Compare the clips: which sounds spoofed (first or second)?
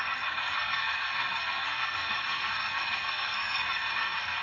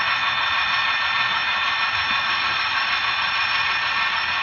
first